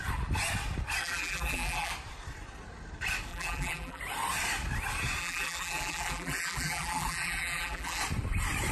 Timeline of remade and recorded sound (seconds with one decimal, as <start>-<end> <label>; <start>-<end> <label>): 0.0-1.0 recorded; 1.0-1.9 remade; 1.9-3.3 recorded; 3.3-4.0 remade; 4.0-5.2 recorded; 5.2-8.0 remade; 8.0-8.7 recorded